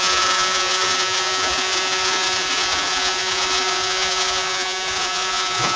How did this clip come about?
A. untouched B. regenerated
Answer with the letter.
B